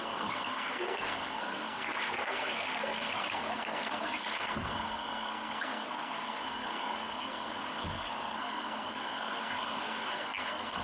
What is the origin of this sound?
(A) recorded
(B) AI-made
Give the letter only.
B